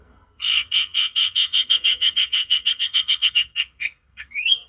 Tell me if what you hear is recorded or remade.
remade